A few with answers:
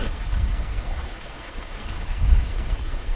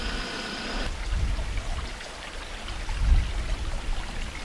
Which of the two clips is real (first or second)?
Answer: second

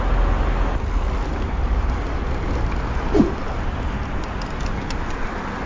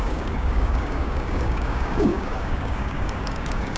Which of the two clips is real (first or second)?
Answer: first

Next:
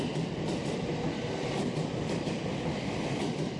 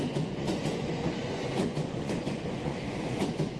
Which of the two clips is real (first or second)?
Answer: first